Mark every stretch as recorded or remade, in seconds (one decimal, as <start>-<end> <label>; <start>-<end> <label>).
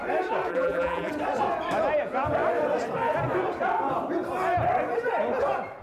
0.0-0.5 recorded; 0.5-1.1 remade; 1.1-5.8 recorded